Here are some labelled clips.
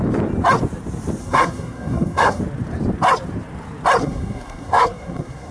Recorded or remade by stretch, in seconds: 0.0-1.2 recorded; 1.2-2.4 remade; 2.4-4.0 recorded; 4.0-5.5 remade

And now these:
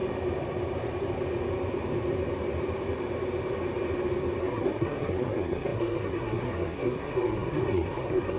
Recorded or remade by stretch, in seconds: 0.0-4.4 recorded; 4.4-8.4 remade

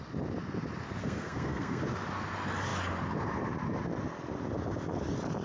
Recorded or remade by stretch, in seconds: 0.0-1.0 recorded; 1.0-1.8 remade; 1.8-5.4 recorded

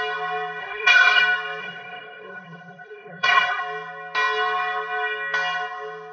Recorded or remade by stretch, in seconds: 0.0-0.6 recorded; 0.6-1.2 remade; 1.2-1.6 recorded; 1.6-3.6 remade; 3.6-6.1 recorded

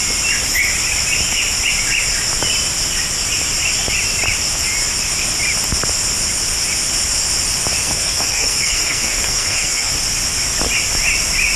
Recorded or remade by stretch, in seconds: 0.0-7.8 recorded; 7.8-9.9 remade; 9.9-11.6 recorded